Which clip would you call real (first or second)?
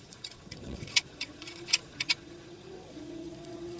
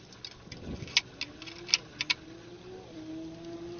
second